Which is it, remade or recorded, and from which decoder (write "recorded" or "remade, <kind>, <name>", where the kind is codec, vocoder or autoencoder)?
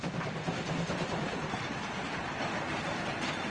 recorded